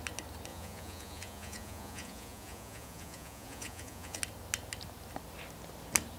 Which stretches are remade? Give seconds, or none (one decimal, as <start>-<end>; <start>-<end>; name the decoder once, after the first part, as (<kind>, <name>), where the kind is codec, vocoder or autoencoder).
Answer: 0.5-4.2 (vocoder, Vocos)